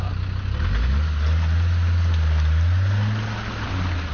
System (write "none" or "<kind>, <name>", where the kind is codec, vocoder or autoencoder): none